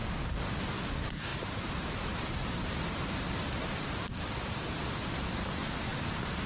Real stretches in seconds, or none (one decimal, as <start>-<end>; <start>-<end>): 0.0-1.3; 5.1-6.5